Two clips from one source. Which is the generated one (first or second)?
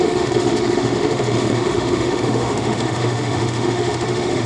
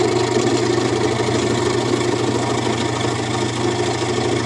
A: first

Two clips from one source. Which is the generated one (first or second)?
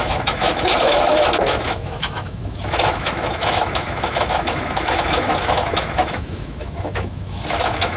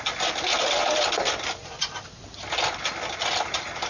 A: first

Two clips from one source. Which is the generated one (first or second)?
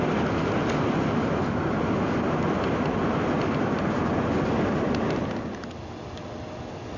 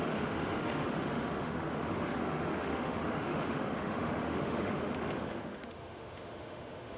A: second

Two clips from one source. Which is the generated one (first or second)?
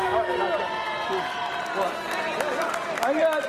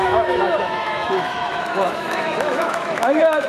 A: second